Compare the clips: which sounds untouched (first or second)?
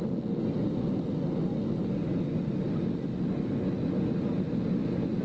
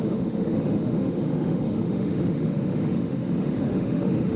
first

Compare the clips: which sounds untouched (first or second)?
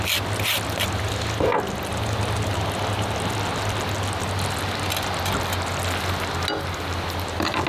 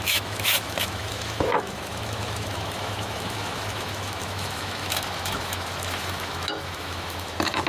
first